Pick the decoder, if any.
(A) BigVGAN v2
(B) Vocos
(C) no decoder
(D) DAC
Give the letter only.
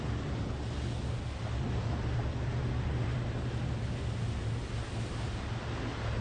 C